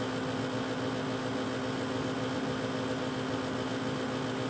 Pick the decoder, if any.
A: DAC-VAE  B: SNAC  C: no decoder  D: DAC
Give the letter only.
C